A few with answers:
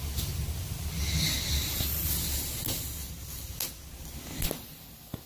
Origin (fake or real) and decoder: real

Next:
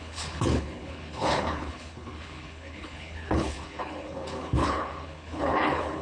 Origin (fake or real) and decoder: fake, codec, HILCodec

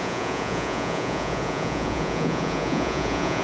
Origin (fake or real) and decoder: fake, vocoder, Vocos